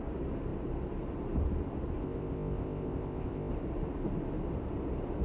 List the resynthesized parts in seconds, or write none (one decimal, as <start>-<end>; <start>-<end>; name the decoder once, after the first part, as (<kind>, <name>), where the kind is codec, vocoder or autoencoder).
2.0-3.5 (codec, ZipCodec)